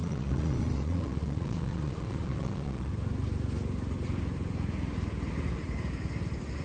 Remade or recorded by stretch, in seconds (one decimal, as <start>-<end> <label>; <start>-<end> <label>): 0.0-2.9 remade; 2.9-6.6 recorded